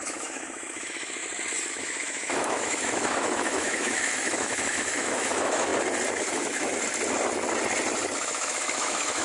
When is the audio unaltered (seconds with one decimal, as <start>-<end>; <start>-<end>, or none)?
1.2-1.7; 5.7-6.3; 6.7-8.2